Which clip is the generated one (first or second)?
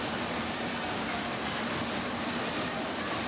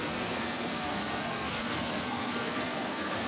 second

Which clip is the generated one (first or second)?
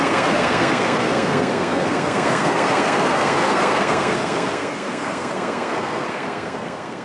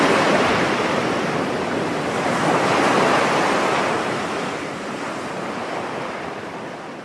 first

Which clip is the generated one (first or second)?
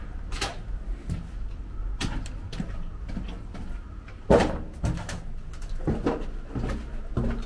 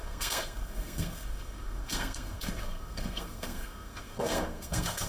second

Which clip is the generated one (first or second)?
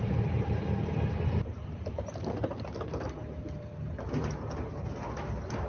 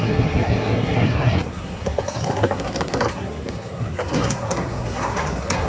second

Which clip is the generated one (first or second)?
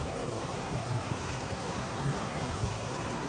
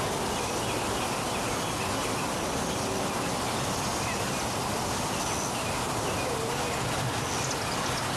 first